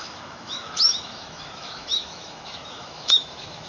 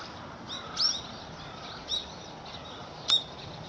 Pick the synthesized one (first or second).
first